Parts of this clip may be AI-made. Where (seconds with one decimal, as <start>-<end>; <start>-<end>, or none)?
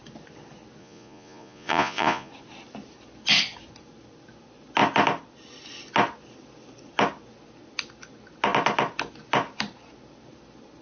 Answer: 0.8-2.3